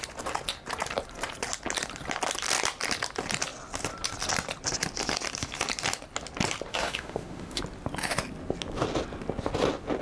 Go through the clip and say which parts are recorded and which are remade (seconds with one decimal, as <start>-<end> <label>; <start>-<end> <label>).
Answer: 0.0-6.7 recorded; 6.7-7.6 remade; 7.6-10.0 recorded

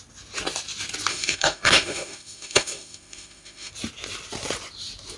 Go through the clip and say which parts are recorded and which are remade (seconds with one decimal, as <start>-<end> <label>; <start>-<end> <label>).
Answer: 0.0-1.1 recorded; 1.1-3.7 remade; 3.7-5.2 recorded